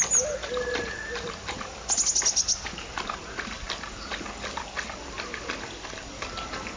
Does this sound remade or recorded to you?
recorded